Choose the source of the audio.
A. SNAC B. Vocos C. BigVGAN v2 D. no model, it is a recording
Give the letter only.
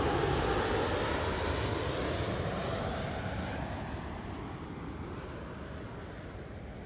D